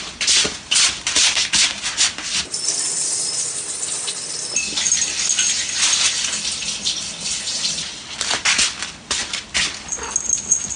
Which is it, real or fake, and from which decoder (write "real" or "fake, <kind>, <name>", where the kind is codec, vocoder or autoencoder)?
real